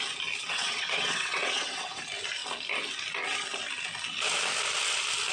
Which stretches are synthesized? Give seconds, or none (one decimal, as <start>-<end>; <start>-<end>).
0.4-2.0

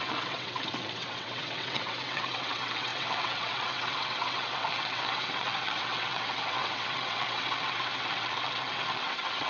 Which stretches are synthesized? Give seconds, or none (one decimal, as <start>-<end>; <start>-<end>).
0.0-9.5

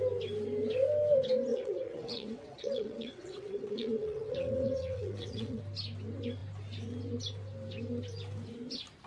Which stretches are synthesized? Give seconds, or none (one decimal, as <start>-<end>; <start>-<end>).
1.5-5.6

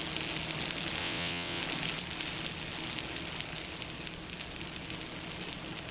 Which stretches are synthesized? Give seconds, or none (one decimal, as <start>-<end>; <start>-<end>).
1.0-1.6

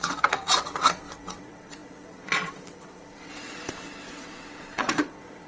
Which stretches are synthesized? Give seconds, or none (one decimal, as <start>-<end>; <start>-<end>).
0.0-5.5

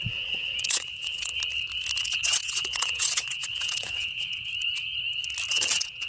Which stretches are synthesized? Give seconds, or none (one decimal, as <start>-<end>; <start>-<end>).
0.0-1.3; 2.0-4.5; 5.5-6.1

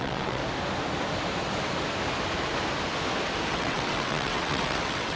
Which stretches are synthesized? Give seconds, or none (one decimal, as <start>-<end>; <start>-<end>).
0.0-0.4; 3.5-5.2

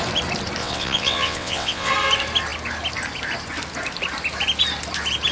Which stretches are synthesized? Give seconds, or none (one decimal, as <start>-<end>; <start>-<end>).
0.6-1.9